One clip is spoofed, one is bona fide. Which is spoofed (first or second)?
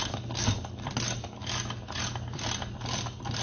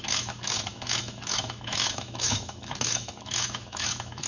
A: second